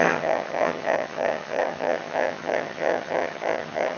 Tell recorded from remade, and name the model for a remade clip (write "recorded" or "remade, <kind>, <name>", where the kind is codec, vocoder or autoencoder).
remade, vocoder, HiFi-GAN